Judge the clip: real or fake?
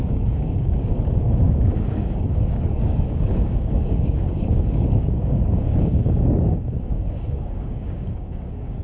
fake